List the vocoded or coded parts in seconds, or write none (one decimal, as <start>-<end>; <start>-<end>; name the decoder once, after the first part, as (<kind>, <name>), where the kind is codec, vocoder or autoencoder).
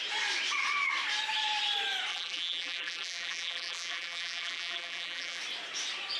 2.1-5.4 (vocoder, BigVGAN v2)